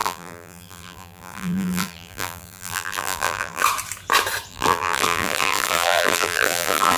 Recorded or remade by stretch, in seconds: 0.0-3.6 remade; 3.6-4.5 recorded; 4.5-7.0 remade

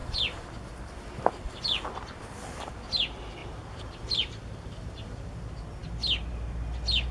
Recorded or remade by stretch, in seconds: 0.0-0.7 remade; 0.7-3.4 recorded; 3.4-5.3 remade; 5.3-7.1 recorded